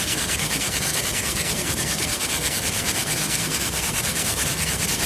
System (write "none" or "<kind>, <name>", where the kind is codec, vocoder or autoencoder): codec, SNAC